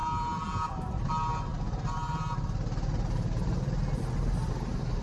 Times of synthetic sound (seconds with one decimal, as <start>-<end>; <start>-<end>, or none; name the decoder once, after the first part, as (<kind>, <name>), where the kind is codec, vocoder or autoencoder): none